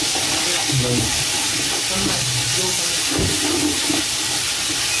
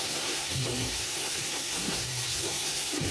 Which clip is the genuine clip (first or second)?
first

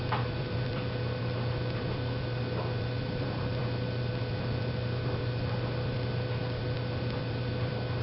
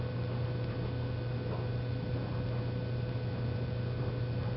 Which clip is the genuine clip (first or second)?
second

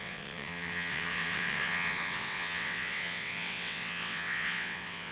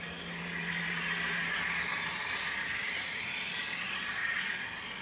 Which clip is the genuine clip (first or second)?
second